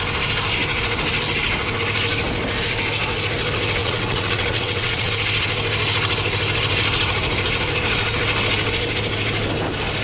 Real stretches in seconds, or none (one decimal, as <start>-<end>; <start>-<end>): 0.0-3.8; 5.1-10.0